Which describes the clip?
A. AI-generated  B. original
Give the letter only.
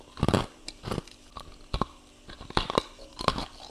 B